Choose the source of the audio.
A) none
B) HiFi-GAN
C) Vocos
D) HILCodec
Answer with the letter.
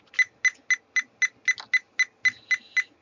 A